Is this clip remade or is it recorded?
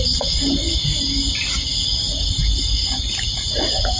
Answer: recorded